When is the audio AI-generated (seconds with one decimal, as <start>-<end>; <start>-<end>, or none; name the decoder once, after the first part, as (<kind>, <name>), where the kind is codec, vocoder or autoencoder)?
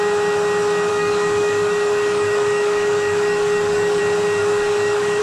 0.9-4.0 (codec, DAC); 4.4-5.2